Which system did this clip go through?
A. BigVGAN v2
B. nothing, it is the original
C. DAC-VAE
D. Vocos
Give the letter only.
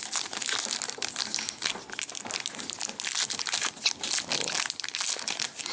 B